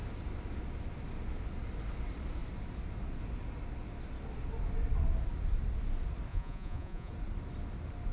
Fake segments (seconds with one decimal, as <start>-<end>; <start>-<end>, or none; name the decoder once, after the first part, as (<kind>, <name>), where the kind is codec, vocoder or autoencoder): 6.3-7.1 (vocoder, Vocos)